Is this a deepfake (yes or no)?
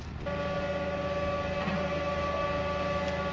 no